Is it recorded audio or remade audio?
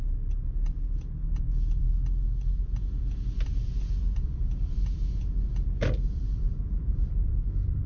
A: recorded